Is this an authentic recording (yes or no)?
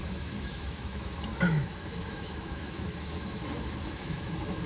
no